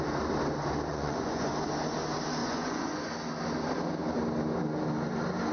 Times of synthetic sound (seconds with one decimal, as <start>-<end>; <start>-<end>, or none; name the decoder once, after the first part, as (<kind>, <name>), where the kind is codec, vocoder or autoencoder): 0.9-1.5 (vocoder, Vocos); 2.4-3.1